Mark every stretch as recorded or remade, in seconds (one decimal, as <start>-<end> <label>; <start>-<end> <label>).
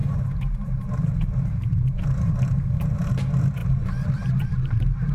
0.0-3.1 remade; 3.1-3.6 recorded; 3.6-5.1 remade